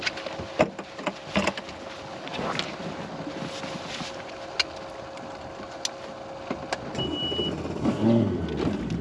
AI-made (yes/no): no